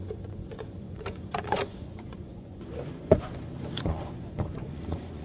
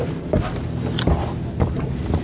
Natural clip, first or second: second